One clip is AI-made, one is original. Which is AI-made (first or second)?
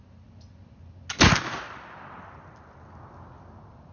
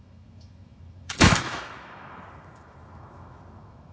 second